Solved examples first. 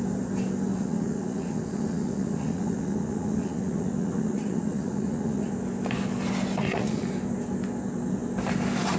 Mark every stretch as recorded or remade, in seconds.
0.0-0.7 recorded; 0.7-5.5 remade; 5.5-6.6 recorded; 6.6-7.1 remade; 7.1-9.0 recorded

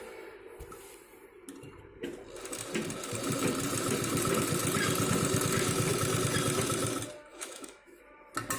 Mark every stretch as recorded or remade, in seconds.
0.0-7.3 recorded; 7.3-8.0 remade; 8.0-8.6 recorded